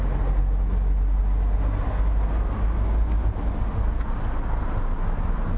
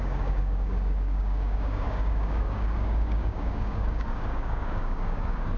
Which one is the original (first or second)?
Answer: first